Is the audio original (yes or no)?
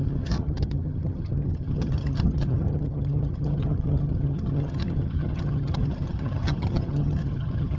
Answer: no